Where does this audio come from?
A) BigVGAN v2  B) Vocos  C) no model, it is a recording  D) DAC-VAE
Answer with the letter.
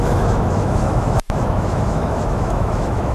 D